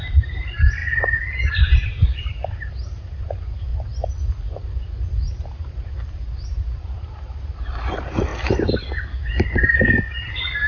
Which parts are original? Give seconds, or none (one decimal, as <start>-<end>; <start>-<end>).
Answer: 0.8-1.5; 3.7-4.8; 8.3-10.7